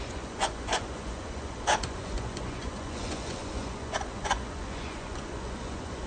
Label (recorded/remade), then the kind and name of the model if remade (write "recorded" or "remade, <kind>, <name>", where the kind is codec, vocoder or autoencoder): remade, vocoder, Vocos